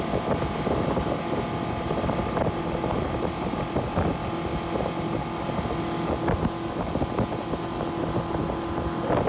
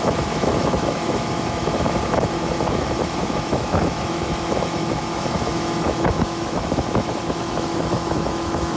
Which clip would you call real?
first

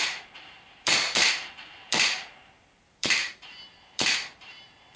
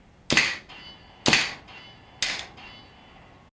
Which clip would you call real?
second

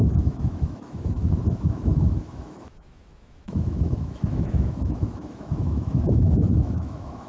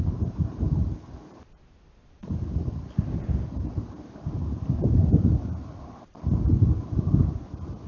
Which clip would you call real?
second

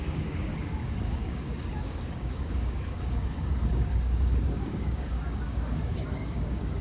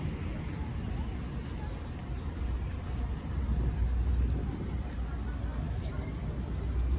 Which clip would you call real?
second